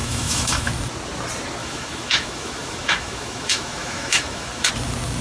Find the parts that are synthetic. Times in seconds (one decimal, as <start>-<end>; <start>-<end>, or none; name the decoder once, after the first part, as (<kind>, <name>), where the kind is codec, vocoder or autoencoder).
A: 0.0-0.7 (autoencoder, DAC-VAE); 1.6-4.7